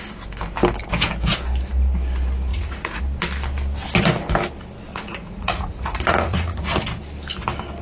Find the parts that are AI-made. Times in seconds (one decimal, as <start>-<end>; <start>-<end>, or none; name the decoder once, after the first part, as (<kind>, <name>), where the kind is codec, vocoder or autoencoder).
2.5-3.0 (vocoder, Vocos); 4.9-6.6